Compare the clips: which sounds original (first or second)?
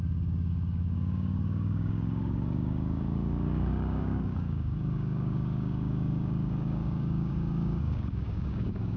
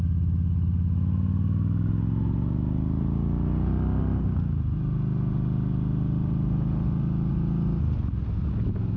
second